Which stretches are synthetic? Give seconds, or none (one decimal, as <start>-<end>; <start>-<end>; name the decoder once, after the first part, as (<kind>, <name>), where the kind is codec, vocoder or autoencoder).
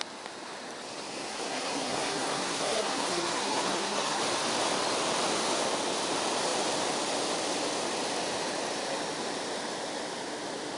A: 1.3-4.2 (codec, SNAC)